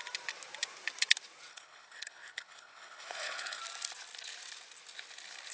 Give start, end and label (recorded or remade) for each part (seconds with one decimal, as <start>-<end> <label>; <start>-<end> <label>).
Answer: 0.0-1.5 recorded; 1.5-3.6 remade; 3.6-5.5 recorded